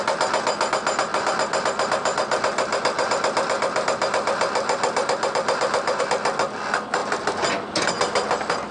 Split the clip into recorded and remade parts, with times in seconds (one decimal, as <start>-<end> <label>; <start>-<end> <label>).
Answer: 0.0-1.1 recorded; 1.1-6.0 remade; 6.0-8.7 recorded

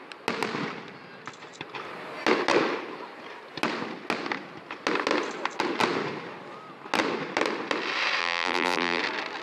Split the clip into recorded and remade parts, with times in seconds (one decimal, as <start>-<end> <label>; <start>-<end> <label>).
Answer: 0.0-8.2 recorded; 8.2-9.0 remade; 9.0-9.4 recorded

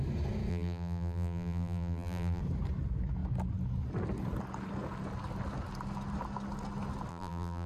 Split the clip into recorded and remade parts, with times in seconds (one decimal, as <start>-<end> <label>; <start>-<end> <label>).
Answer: 0.0-0.5 recorded; 0.5-2.4 remade; 2.4-7.1 recorded; 7.1-7.7 remade

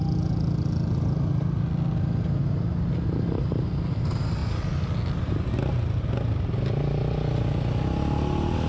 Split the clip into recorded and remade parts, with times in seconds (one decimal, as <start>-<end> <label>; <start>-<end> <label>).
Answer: 0.0-8.7 recorded

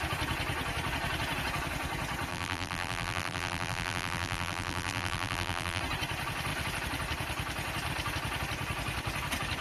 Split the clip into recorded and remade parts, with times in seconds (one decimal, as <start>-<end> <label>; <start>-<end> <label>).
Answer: 0.0-2.3 recorded; 2.3-5.8 remade; 5.8-9.6 recorded

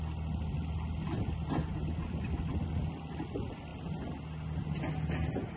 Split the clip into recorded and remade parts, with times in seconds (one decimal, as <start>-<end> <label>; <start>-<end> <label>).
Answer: 0.0-5.6 recorded